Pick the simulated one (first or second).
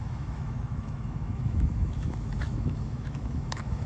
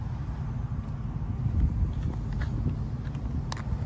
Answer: first